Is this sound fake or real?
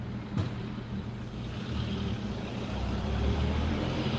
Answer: fake